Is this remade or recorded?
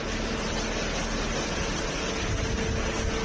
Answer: recorded